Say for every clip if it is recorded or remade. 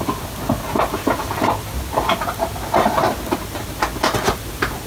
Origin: recorded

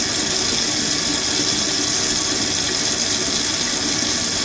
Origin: recorded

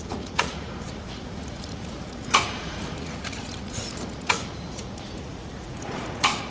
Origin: remade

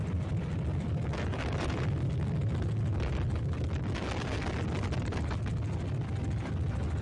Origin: recorded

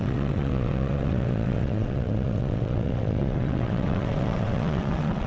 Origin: remade